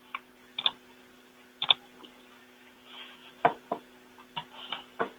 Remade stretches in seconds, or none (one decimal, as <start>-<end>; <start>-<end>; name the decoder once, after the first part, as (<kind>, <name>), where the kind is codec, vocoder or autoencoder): 2.4-3.3 (autoencoder, DAC-VAE)